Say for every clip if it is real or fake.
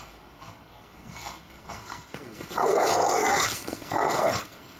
fake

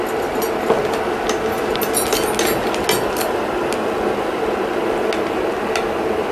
real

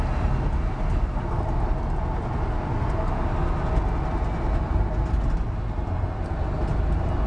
real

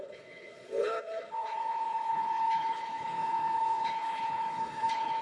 fake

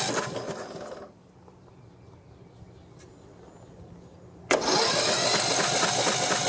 real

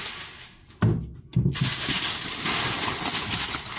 real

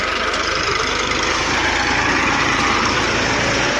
fake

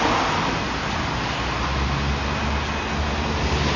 real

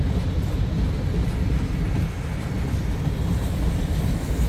real